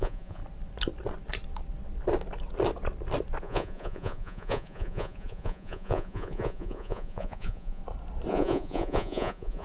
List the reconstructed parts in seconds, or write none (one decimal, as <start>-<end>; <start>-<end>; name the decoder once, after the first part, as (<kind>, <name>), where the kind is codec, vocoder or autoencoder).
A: 0.0-0.4 (vocoder, Vocos); 3.4-7.8; 8.3-9.6